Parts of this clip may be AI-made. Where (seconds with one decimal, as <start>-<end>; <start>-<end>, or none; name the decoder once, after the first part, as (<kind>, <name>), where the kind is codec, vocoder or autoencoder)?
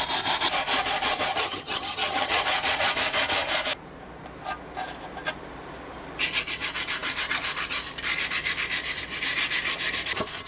1.3-2.4 (vocoder, HiFi-GAN)